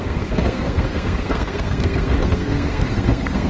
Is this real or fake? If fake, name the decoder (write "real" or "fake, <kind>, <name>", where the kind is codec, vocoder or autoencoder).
fake, codec, SNAC